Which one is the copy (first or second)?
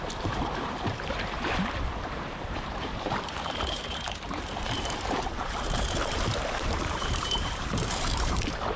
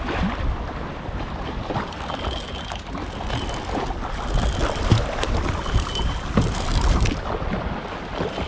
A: first